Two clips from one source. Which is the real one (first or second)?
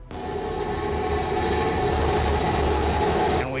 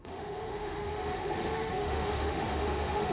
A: first